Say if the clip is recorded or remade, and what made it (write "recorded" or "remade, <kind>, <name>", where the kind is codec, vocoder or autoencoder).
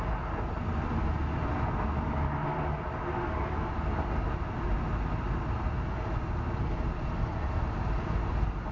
recorded